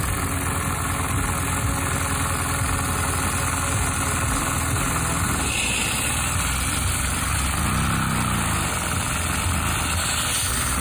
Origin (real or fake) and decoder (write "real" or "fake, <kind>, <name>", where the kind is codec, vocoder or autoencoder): real